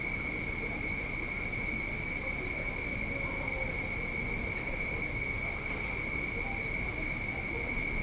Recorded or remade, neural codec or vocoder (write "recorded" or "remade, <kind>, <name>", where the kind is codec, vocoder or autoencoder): recorded